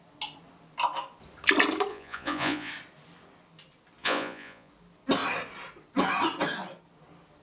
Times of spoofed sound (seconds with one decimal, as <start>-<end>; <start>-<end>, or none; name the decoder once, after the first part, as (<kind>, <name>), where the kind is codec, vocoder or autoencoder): 1.9-2.7 (vocoder, Vocos); 4.0-4.7